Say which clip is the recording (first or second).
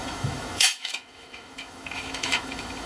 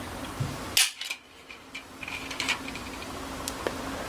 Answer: second